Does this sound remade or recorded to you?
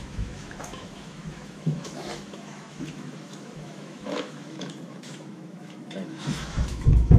remade